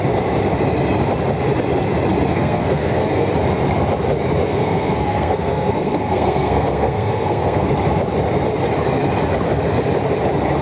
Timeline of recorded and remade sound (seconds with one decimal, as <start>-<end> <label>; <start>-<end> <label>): 0.0-2.3 recorded; 2.3-3.3 remade; 3.3-4.4 recorded; 4.4-7.7 remade; 7.7-10.6 recorded